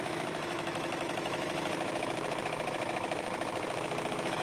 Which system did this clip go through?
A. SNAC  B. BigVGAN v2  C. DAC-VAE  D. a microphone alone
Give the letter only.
C